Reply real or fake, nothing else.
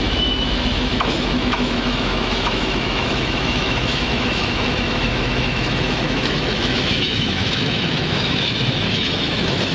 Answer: fake